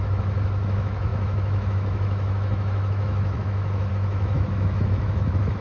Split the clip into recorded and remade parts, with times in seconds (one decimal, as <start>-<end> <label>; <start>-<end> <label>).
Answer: 0.0-5.6 remade